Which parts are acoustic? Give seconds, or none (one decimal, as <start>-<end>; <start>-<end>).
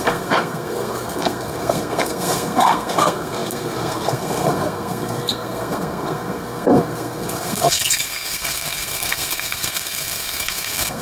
none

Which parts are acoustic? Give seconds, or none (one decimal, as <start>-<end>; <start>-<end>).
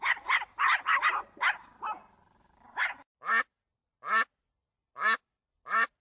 0.0-6.0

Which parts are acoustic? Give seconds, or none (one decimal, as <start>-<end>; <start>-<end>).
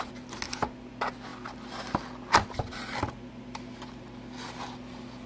0.0-5.3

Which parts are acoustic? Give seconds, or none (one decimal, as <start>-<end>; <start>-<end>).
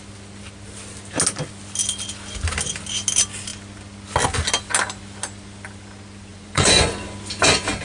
0.0-6.3; 6.9-7.8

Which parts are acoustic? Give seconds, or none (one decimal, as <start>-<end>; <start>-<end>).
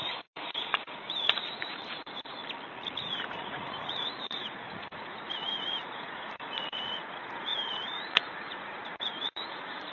2.4-3.0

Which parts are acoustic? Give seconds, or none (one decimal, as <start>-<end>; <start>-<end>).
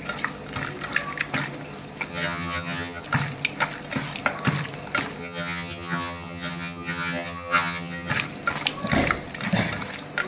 0.0-2.1; 3.0-5.2; 8.1-10.3